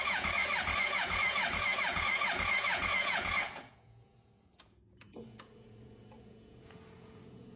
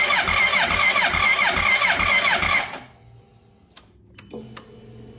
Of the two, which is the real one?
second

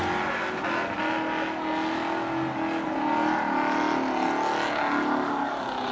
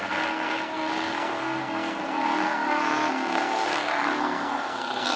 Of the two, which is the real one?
first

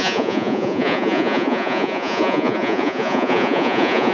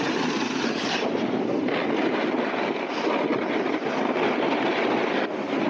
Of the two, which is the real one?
second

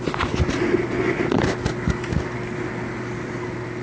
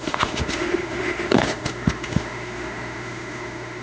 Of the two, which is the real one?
first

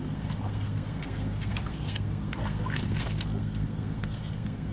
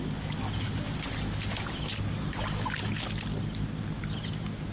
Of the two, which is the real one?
second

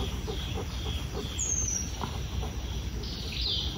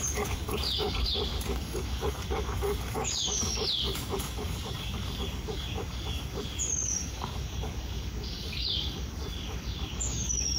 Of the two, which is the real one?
first